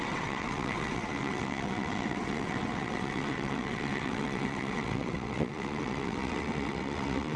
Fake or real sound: fake